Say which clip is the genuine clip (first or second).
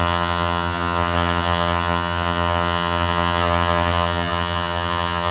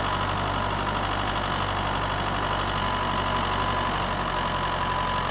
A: second